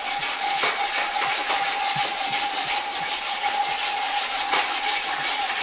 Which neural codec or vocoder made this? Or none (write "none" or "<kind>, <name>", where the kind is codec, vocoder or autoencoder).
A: vocoder, Vocos